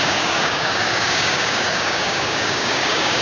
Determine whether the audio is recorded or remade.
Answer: remade